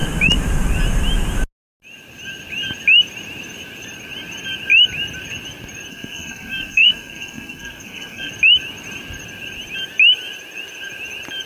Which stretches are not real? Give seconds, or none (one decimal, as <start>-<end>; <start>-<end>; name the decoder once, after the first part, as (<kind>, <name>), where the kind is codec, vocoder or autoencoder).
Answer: 5.9-8.3 (codec, SNAC)